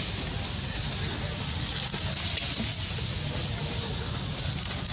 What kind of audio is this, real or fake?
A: real